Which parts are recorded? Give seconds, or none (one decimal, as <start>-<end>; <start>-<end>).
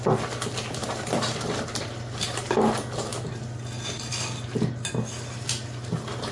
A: 0.0-0.8; 2.4-6.3